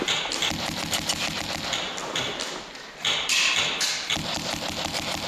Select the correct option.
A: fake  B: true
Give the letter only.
B